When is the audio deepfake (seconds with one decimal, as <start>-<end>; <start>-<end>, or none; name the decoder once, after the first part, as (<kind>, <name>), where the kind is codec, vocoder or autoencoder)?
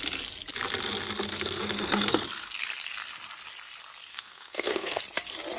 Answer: 1.3-2.2 (codec, SNAC); 4.1-5.0